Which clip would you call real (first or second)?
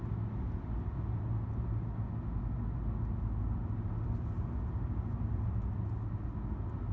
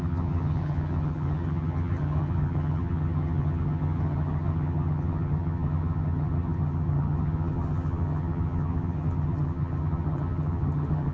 first